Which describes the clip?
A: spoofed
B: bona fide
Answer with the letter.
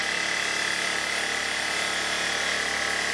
B